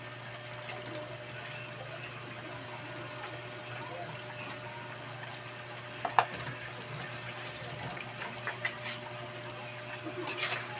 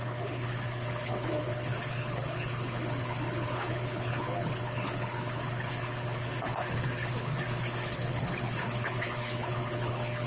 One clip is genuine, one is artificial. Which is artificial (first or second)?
second